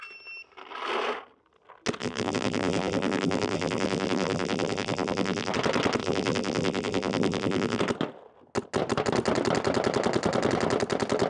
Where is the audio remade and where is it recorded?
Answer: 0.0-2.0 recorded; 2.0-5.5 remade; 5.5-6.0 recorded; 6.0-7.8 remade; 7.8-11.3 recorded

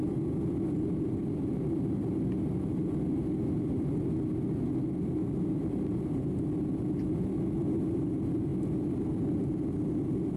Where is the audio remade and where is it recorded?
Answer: 0.0-10.4 recorded